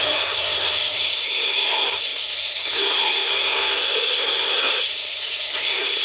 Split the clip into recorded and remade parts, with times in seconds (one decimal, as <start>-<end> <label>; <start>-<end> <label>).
0.0-6.0 remade